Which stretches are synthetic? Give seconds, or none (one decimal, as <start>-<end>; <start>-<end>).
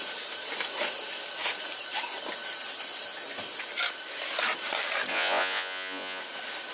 5.1-6.2